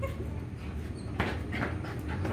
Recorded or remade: remade